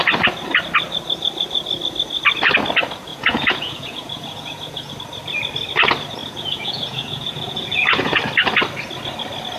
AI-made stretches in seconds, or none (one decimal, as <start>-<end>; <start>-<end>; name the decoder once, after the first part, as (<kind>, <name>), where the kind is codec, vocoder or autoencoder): 3.1-4.9 (vocoder, Vocos); 6.2-8.2